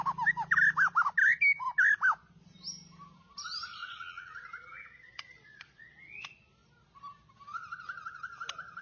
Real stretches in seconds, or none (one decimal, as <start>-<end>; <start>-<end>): 0.0-3.8; 6.0-8.8